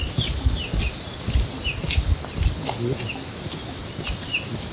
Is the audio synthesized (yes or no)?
no